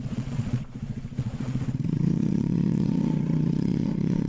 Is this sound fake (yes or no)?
yes